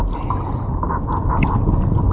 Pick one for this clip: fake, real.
real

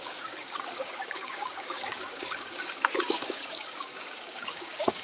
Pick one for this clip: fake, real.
fake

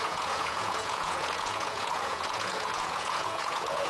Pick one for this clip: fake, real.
fake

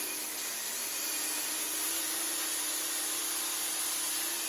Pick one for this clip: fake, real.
fake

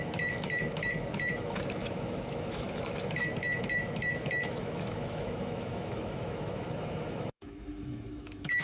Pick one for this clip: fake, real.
fake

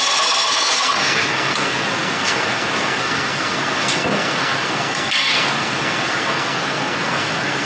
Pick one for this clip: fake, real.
fake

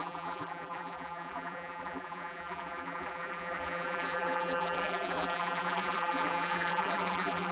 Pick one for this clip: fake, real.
fake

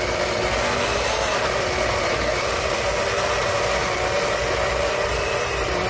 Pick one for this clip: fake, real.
real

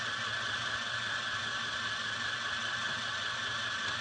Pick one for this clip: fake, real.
real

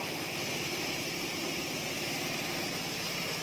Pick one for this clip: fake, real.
real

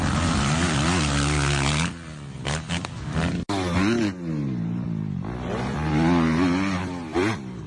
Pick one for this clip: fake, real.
real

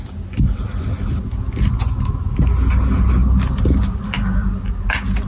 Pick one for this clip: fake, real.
real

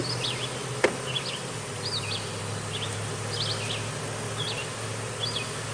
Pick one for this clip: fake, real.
real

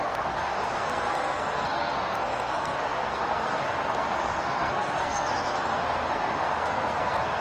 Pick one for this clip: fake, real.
fake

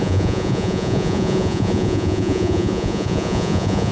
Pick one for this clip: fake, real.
fake